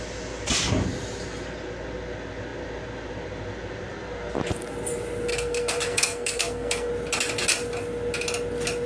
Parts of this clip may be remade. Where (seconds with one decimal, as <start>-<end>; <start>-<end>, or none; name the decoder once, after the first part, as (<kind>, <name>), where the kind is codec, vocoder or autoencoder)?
5.3-6.9 (codec, SNAC)